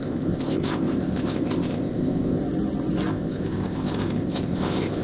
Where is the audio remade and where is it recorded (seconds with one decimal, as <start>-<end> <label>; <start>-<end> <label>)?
0.0-2.4 remade; 2.4-3.1 recorded; 3.1-5.0 remade